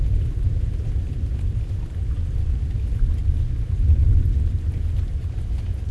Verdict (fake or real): real